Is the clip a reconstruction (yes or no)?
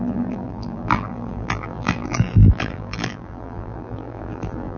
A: yes